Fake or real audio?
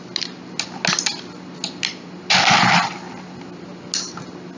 real